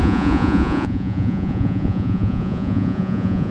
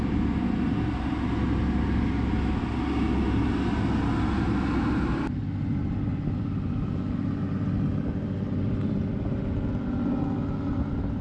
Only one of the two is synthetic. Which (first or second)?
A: first